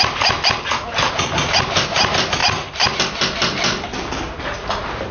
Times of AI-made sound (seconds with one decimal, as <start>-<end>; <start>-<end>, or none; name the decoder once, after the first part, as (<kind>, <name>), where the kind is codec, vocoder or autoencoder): none